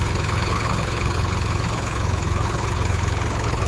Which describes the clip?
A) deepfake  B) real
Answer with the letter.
A